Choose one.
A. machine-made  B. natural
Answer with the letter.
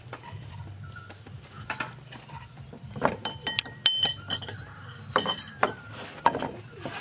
A